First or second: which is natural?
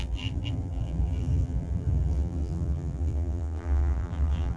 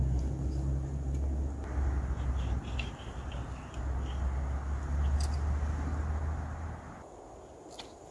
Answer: second